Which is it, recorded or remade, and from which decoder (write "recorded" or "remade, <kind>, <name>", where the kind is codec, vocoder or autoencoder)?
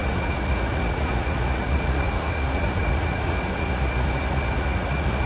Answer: remade, vocoder, Vocos